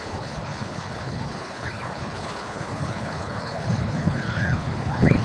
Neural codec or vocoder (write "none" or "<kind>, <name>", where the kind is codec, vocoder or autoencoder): codec, HILCodec